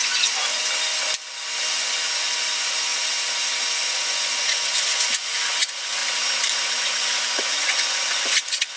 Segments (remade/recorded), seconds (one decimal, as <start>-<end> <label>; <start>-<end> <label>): 0.0-0.6 remade; 0.6-1.7 recorded; 1.7-2.9 remade; 2.9-3.8 recorded; 3.8-6.0 remade; 6.0-6.8 recorded; 6.8-8.8 remade